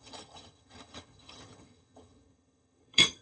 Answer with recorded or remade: remade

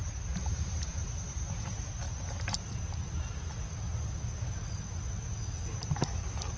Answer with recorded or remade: recorded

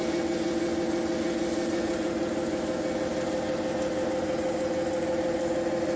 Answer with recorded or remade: recorded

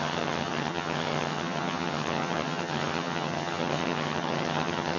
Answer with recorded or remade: remade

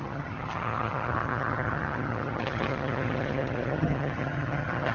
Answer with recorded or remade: remade